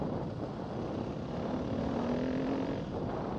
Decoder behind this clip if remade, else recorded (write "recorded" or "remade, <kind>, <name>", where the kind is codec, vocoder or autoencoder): recorded